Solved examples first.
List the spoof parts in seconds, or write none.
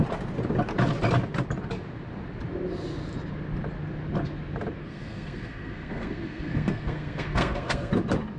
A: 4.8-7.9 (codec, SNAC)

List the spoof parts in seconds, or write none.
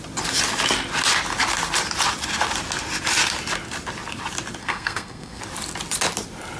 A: 4.6-5.4 (codec, SNAC)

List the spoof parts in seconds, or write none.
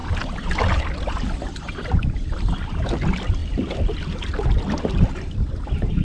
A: none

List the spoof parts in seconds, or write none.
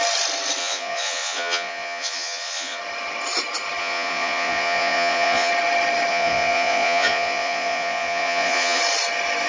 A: 0.6-2.8 (vocoder, Vocos); 3.8-5.5; 6.1-8.8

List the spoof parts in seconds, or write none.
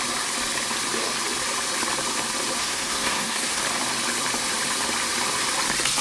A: 2.6-3.6 (codec, SNAC)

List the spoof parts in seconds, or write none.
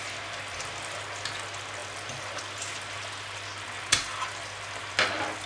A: none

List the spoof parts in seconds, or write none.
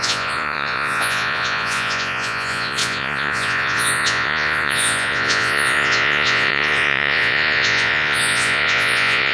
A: 0.0-9.3 (vocoder, Vocos)